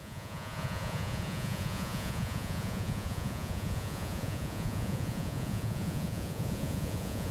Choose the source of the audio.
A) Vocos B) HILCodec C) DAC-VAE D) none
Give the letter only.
A